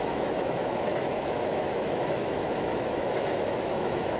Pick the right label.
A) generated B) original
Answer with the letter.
A